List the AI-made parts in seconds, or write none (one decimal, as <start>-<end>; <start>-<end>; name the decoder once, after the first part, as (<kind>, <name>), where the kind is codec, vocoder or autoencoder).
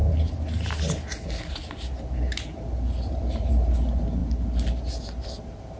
none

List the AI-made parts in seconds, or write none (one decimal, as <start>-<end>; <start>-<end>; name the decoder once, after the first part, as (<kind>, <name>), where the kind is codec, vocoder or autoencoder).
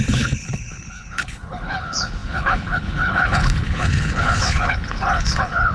0.0-5.7 (codec, HILCodec)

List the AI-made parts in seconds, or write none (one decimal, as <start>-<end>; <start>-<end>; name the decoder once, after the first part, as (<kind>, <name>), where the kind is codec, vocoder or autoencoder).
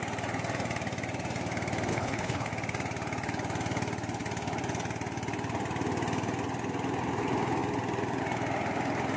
1.9-2.5 (codec, HILCodec)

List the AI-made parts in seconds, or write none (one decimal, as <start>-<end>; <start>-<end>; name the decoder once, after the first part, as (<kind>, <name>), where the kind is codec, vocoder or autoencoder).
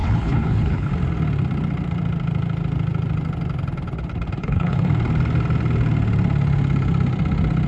0.0-0.9 (codec, HILCodec); 4.4-4.9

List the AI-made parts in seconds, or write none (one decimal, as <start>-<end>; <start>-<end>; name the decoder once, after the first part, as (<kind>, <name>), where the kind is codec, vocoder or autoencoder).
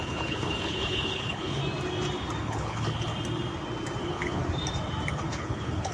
0.0-1.6 (codec, HILCodec); 2.4-3.1; 4.0-4.4; 5.1-5.9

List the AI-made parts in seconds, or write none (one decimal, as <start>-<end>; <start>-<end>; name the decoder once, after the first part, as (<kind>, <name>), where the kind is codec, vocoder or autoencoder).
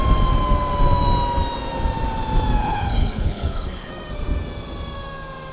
2.6-3.9 (codec, HILCodec)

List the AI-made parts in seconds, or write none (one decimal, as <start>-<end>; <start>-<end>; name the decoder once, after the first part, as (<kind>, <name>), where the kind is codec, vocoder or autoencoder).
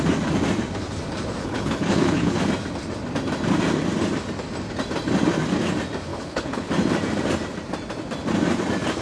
1.4-2.4 (codec, HILCodec); 6.1-6.7